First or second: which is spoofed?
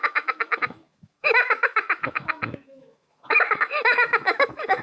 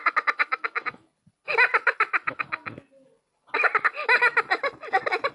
first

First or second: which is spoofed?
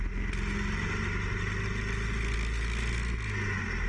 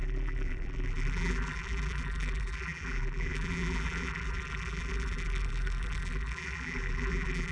second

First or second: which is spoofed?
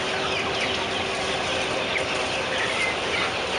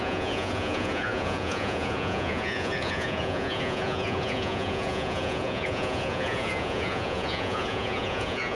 second